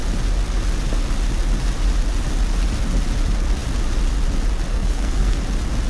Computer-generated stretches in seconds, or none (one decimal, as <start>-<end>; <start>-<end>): 4.7-5.4